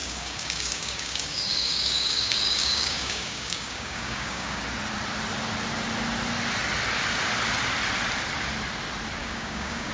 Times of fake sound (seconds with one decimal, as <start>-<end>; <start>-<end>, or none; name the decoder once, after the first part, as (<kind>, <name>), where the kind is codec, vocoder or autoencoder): 0.0-4.6 (codec, DAC); 9.2-9.9